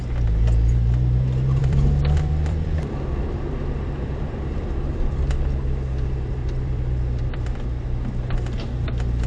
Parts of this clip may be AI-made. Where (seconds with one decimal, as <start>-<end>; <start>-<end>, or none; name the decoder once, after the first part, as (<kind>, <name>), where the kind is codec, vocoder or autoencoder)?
1.6-5.3 (vocoder, BigVGAN v2); 6.4-7.4